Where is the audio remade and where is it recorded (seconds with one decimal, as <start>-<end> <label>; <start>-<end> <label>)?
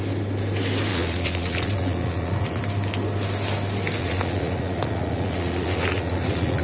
0.0-0.9 recorded; 0.9-2.6 remade; 2.6-4.0 recorded; 4.0-6.6 remade